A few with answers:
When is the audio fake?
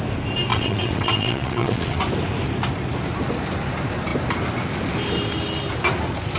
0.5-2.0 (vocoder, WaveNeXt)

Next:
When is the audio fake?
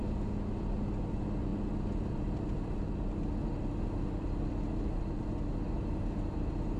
none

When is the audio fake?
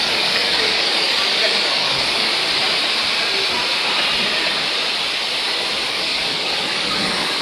0.0-2.3 (codec, DAC); 5.9-7.4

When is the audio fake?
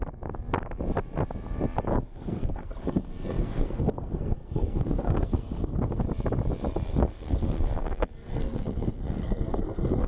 1.9-6.0 (codec, SNAC); 6.9-10.1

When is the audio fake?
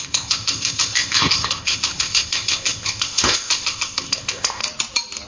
0.0-4.6 (codec, ZipCodec)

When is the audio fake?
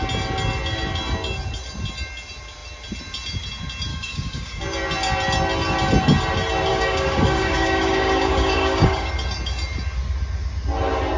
3.9-4.6 (codec, DAC); 6.7-9.1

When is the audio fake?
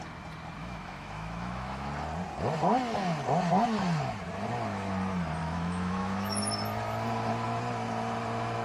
0.6-1.9 (autoencoder, DAC-VAE); 5.4-6.4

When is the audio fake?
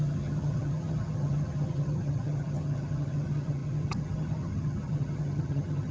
0.0-5.9 (vocoder, HiFi-GAN)